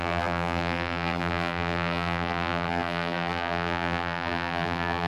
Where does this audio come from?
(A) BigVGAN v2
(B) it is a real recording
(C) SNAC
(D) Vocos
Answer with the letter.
A